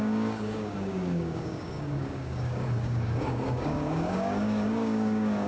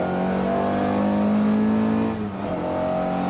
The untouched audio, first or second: second